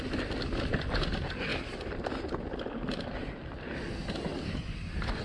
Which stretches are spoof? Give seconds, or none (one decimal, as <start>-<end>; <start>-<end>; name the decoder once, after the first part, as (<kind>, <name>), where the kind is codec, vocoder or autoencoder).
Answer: none